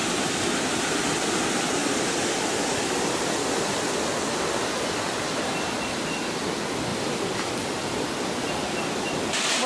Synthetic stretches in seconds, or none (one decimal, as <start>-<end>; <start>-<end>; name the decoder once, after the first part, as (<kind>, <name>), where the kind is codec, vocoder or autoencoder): 0.0-0.6 (vocoder, BigVGAN v2); 1.8-3.2; 6.9-9.1